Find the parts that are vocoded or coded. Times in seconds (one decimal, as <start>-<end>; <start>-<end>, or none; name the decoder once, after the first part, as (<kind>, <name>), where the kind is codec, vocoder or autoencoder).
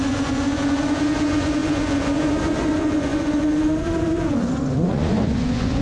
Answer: 0.0-5.8 (vocoder, Vocos)